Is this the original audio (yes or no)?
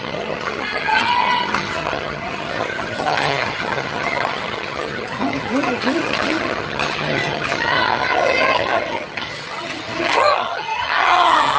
no